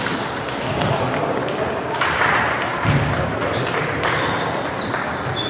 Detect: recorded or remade recorded